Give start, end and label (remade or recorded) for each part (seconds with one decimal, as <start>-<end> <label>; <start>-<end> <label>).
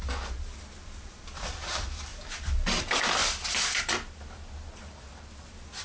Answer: 0.0-5.8 recorded